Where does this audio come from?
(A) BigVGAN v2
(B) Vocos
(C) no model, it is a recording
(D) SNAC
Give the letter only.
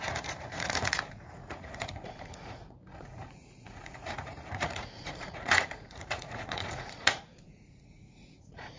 B